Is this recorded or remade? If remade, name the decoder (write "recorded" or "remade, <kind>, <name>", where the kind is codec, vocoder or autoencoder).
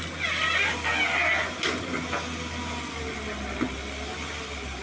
recorded